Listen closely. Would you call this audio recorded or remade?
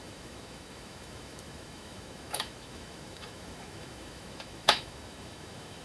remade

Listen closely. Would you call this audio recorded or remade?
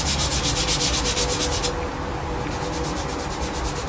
recorded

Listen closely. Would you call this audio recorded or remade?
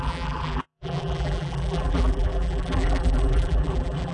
remade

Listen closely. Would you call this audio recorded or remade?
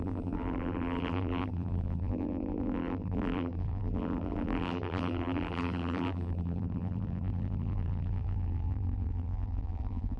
remade